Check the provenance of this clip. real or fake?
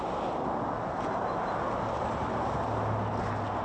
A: real